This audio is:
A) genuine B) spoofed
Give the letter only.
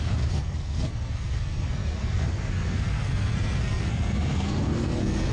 B